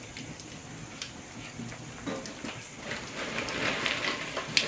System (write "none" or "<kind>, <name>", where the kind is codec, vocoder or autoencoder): none